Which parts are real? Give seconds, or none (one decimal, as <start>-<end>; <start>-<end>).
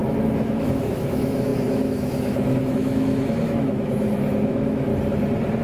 4.9-5.6